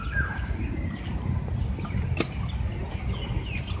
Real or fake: real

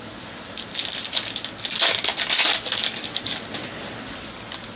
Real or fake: real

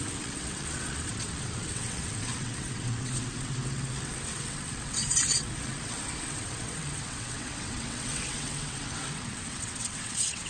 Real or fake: fake